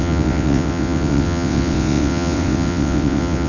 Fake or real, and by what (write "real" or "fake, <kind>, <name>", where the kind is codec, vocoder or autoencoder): fake, vocoder, WaveNeXt